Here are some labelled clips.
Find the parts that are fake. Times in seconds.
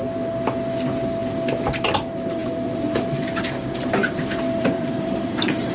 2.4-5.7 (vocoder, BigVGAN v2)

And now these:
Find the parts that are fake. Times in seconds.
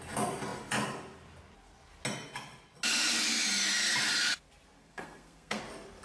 4.8-5.6 (codec, SNAC)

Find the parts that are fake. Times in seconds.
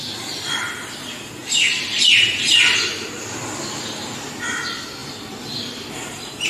none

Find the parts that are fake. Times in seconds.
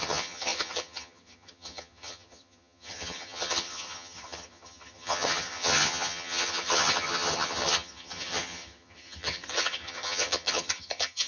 0.0-11.3 (vocoder, HiFi-GAN)